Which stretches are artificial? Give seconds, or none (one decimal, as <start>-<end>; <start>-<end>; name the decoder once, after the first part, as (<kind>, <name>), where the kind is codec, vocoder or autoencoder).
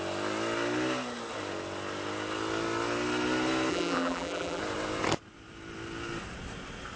3.7-4.6 (vocoder, BigVGAN v2)